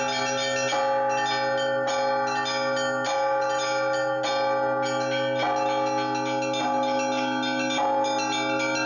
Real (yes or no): yes